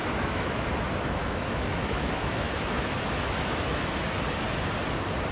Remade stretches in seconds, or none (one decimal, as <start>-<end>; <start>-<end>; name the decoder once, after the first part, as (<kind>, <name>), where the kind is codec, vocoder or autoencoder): 0.0-0.7 (autoencoder, DAC-VAE); 1.2-3.9

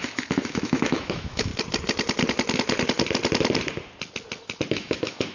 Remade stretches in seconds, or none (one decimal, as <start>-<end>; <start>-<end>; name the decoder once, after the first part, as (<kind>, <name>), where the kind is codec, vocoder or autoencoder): 0.0-1.5 (autoencoder, DAC-VAE); 4.7-5.3